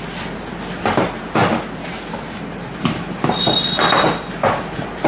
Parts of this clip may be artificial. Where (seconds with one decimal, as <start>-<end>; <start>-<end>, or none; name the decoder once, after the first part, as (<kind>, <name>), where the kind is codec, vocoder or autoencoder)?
none